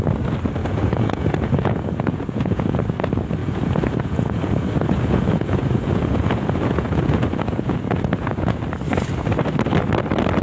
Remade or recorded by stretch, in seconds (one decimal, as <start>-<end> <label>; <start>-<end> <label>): 0.0-0.6 recorded; 0.6-2.8 remade; 2.8-3.4 recorded; 3.4-8.6 remade; 8.6-10.4 recorded